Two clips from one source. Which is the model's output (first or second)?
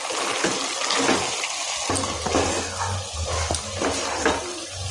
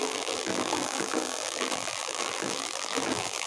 second